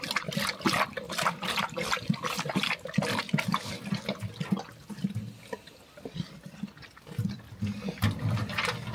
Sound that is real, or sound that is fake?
fake